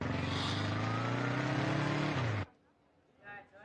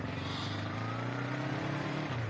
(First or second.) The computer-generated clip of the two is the second